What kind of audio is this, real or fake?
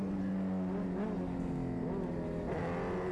real